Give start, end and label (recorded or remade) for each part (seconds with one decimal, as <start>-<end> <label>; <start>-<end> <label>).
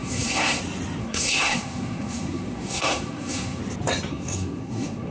0.0-0.6 remade; 0.6-1.0 recorded; 1.0-3.6 remade; 3.6-4.1 recorded; 4.1-5.1 remade